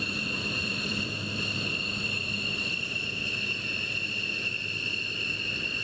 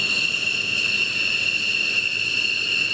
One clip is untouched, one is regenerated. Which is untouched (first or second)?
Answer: second